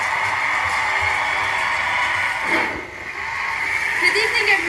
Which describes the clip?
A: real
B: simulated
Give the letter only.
A